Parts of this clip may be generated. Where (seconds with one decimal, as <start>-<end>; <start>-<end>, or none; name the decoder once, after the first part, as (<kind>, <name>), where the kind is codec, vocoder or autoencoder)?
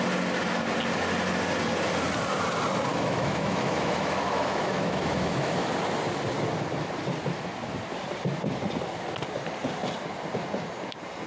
2.9-5.7 (autoencoder, DAC-VAE)